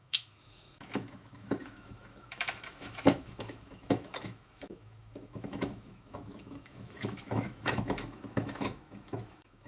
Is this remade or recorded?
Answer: remade